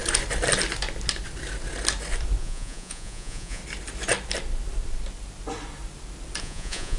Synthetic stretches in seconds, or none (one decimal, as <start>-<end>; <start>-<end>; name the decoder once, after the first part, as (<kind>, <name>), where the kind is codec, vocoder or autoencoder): 2.4-3.6 (vocoder, Vocos); 6.4-7.0